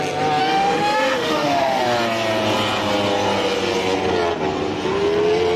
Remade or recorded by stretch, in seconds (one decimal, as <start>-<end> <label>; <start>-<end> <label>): 0.0-0.4 recorded; 0.4-1.8 remade; 1.8-5.6 recorded

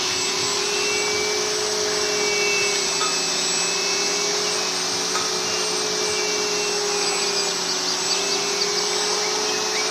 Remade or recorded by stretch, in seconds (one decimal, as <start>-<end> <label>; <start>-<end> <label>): 0.0-9.9 recorded

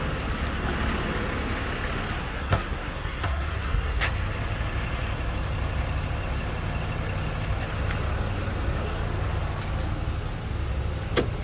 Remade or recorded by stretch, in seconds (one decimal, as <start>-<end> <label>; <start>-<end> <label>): 0.0-2.2 recorded; 2.2-4.1 remade; 4.1-11.4 recorded

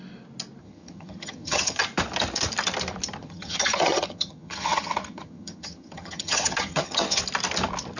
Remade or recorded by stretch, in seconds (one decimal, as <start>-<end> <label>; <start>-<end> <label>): 0.0-0.6 recorded; 0.6-1.8 remade; 1.8-3.2 recorded; 3.2-7.2 remade; 7.2-8.0 recorded

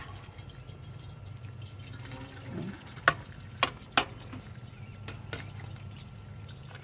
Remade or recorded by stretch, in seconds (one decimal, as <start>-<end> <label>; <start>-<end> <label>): 0.0-6.8 recorded

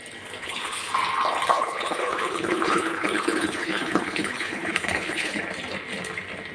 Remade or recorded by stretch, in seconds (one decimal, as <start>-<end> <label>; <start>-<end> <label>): 0.0-0.4 recorded; 0.4-0.9 remade; 0.9-1.5 recorded; 1.5-5.4 remade; 5.4-6.5 recorded

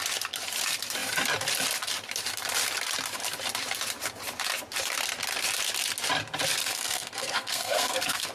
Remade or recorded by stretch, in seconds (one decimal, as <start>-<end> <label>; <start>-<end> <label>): 0.0-6.6 recorded; 6.6-8.3 remade